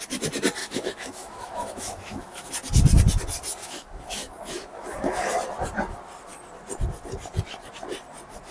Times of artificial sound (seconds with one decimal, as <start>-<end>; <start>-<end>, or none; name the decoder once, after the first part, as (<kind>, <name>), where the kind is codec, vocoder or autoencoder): 0.6-2.5 (autoencoder, DAC-VAE); 3.6-5.3

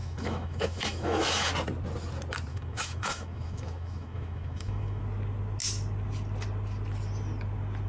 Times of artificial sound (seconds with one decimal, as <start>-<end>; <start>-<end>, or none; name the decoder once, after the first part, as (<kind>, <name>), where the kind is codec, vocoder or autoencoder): 0.0-1.5 (autoencoder, DAC-VAE); 2.5-5.0